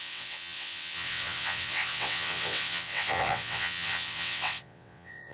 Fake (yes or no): yes